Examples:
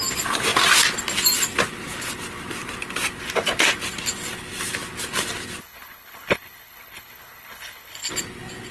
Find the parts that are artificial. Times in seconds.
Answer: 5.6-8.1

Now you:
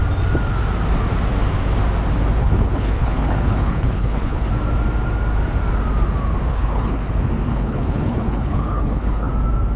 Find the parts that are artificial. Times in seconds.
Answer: 2.4-4.5; 6.5-7.1; 7.5-9.3